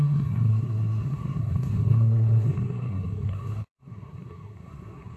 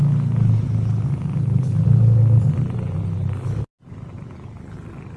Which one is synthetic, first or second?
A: first